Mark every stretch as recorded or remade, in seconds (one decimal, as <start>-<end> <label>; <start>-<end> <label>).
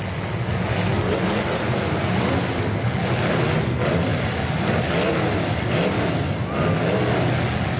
0.0-7.8 recorded